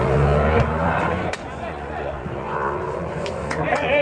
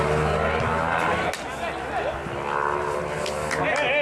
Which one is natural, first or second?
second